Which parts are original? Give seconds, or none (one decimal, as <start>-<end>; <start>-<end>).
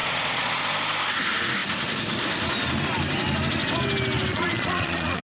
0.6-4.3